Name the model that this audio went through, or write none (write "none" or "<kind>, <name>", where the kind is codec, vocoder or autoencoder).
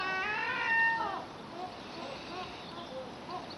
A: none